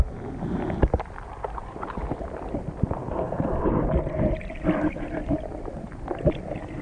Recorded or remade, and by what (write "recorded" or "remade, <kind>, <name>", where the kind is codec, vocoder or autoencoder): recorded